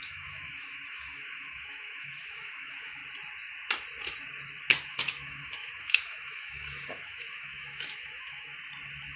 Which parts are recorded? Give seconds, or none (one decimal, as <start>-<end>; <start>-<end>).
3.0-4.9; 8.5-9.2